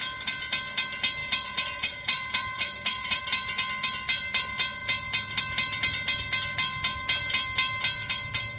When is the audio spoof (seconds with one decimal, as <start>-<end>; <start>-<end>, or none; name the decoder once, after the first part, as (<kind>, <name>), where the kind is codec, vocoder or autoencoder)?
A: 1.2-3.2 (vocoder, Vocos)